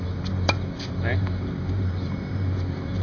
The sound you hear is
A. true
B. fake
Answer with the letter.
B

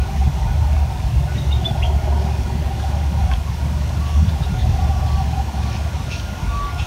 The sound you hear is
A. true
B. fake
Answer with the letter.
B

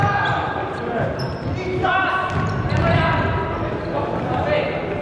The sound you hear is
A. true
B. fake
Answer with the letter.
A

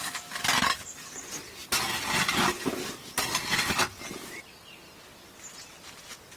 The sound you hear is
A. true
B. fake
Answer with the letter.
A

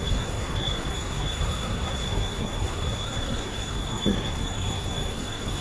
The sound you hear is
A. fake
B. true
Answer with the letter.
A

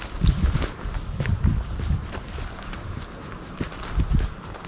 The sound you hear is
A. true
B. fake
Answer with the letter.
A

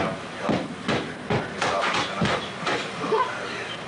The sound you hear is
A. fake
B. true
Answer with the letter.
B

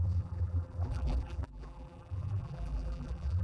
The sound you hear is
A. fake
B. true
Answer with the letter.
A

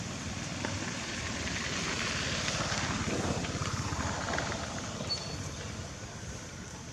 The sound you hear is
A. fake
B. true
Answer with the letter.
A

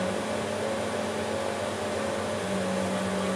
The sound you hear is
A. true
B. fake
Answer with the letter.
A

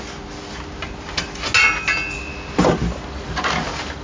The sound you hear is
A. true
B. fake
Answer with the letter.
A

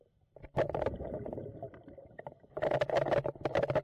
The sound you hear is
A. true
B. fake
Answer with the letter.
A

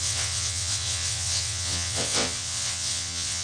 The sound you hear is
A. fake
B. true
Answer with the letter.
A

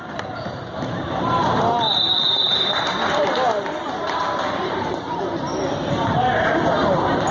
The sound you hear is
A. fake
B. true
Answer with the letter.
A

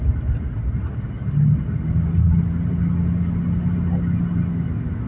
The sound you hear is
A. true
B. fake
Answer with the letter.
A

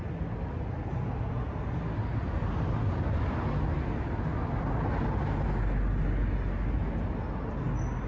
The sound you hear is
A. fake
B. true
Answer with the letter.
B